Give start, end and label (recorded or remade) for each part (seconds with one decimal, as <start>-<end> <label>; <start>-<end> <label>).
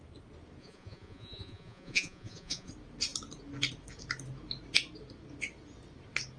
0.0-0.6 recorded; 0.6-2.7 remade; 2.7-6.4 recorded